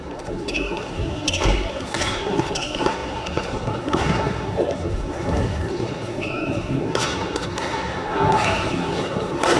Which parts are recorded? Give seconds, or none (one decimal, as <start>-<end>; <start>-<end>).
none